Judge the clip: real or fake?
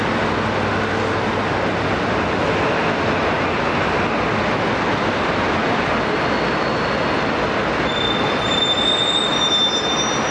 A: real